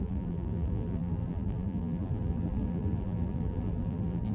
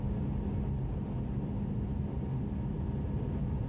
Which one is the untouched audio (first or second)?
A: second